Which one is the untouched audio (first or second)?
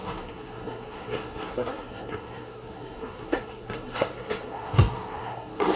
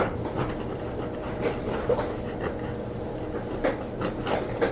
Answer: second